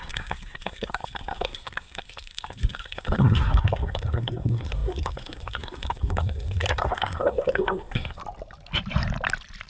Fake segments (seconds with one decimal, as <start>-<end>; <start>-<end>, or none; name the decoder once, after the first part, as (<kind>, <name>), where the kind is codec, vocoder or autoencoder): 0.0-8.2 (codec, SNAC)